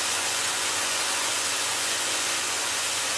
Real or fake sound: fake